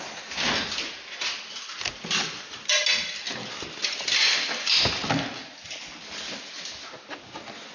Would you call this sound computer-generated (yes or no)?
no